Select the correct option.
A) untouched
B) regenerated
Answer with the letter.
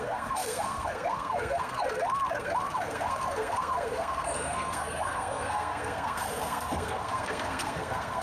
B